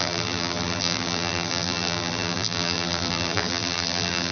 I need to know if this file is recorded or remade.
remade